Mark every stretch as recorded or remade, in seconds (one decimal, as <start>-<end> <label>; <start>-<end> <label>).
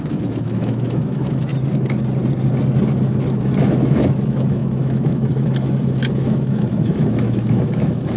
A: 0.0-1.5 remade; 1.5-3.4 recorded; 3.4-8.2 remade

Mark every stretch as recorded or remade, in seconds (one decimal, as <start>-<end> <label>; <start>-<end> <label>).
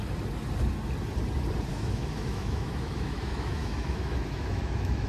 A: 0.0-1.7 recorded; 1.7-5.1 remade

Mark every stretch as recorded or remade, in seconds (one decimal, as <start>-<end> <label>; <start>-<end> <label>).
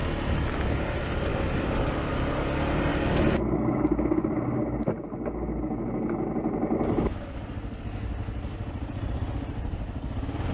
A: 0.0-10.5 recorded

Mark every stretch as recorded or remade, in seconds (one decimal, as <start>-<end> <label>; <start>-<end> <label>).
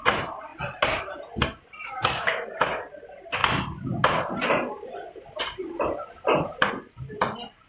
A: 0.0-1.8 recorded; 1.8-2.3 remade; 2.3-7.7 recorded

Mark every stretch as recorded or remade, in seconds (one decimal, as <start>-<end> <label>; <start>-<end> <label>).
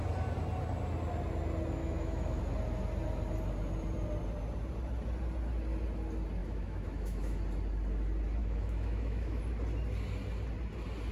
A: 0.0-1.8 recorded; 1.8-2.4 remade; 2.4-6.4 recorded; 6.4-7.4 remade; 7.4-8.4 recorded; 8.4-9.4 remade; 9.4-11.1 recorded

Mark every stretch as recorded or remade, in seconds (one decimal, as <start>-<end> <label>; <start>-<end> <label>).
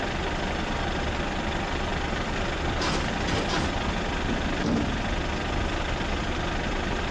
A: 0.0-7.1 recorded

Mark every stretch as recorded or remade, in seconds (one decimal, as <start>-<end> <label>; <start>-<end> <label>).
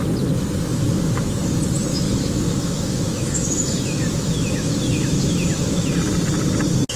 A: 0.0-0.7 recorded; 0.7-1.3 remade; 1.3-1.9 recorded; 1.9-5.9 remade; 5.9-7.0 recorded